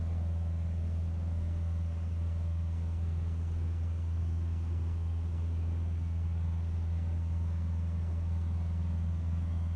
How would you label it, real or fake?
fake